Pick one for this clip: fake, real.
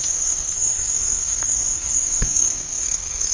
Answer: fake